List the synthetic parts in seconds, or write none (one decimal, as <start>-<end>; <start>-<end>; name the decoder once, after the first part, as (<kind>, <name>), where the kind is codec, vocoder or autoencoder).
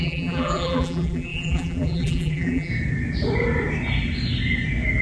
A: 0.0-2.7 (vocoder, BigVGAN v2)